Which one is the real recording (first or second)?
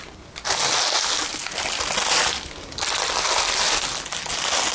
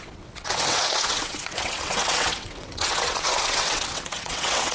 first